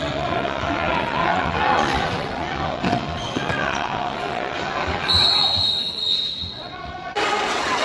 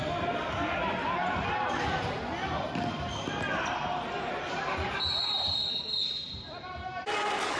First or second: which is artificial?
first